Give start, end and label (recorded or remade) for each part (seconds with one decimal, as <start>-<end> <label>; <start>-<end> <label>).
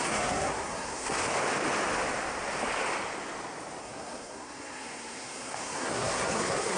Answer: 0.0-1.2 remade; 1.2-3.8 recorded; 3.8-6.8 remade